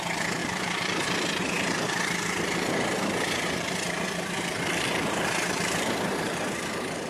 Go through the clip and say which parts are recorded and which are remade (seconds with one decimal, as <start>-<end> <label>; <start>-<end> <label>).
0.0-7.1 remade